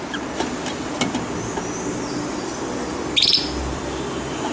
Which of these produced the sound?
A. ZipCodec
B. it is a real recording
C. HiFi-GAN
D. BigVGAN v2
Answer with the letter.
B